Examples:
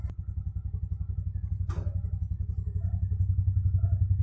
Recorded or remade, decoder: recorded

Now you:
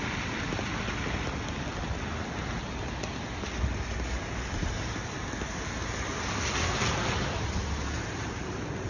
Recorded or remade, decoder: recorded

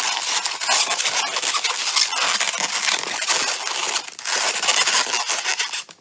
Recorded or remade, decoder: recorded